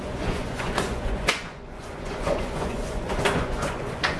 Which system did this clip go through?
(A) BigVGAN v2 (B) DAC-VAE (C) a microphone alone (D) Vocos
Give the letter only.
D